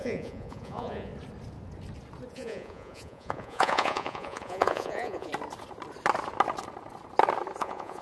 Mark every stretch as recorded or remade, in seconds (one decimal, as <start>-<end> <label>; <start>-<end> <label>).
0.0-1.1 remade; 1.1-2.3 recorded; 2.3-5.3 remade; 5.3-7.6 recorded; 7.6-8.0 remade